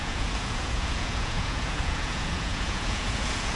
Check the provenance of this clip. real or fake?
fake